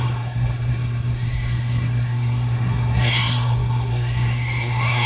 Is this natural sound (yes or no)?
no